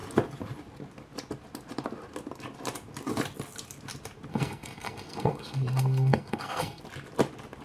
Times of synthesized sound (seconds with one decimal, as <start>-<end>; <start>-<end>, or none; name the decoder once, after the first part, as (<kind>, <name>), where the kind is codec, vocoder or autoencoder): 4.3-6.8 (codec, SNAC)